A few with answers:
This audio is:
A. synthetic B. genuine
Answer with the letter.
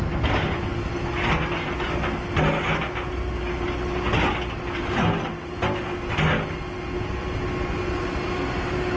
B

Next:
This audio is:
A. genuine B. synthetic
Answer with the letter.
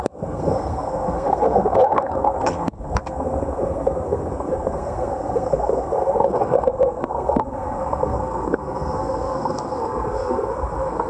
B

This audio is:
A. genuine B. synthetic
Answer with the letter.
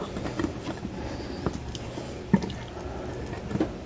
A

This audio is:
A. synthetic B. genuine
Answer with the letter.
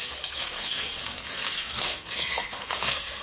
A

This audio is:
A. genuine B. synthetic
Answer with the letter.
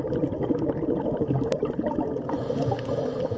A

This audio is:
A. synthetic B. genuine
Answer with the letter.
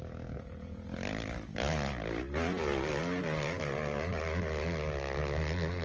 B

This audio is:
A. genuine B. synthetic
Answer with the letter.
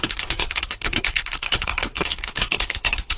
B